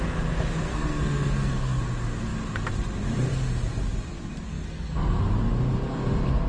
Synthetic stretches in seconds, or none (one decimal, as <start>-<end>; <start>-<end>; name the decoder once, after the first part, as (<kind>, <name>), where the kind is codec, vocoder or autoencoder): 0.6-1.8 (codec, SNAC); 4.5-5.2